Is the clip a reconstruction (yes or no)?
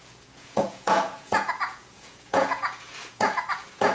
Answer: yes